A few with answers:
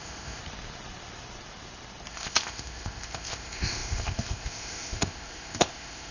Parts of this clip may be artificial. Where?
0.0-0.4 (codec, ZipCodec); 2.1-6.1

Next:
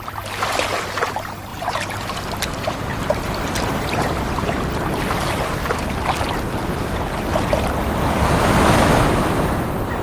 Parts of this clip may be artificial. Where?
1.5-2.1 (vocoder, BigVGAN v2)